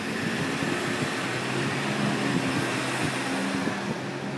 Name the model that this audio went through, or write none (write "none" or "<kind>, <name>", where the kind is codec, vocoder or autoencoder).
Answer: none